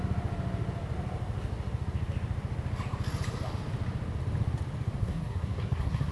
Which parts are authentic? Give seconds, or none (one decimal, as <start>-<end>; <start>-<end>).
0.0-5.0

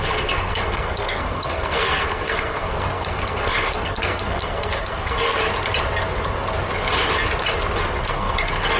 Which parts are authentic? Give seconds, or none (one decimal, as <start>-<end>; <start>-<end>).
5.4-8.0